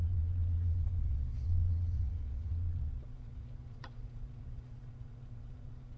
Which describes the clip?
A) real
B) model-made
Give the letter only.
B